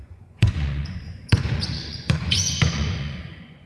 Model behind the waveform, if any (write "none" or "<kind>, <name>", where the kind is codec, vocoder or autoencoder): vocoder, Vocos